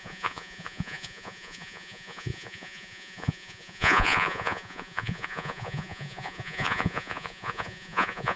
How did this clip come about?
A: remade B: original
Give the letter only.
A